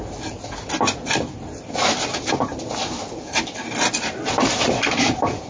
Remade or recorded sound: recorded